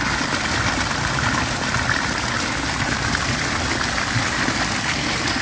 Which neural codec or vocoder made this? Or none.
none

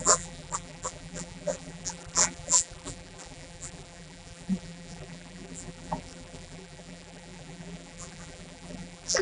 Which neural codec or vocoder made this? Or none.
vocoder, BigVGAN v2